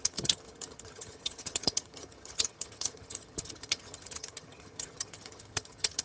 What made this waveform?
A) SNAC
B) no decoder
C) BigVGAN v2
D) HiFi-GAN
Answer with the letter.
D